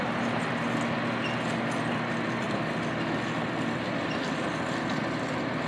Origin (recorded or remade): recorded